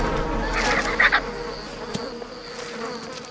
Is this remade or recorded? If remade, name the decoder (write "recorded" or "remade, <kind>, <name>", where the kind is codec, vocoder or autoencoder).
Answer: recorded